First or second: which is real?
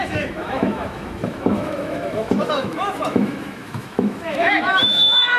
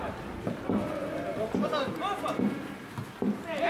second